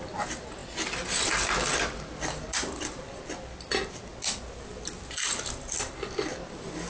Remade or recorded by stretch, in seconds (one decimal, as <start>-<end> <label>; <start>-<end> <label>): 0.0-6.9 recorded